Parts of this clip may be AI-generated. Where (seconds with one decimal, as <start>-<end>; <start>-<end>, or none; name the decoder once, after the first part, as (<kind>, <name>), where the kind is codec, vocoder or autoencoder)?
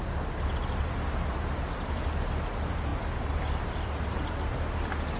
none